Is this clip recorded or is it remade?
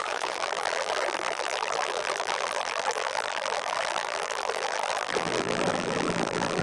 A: remade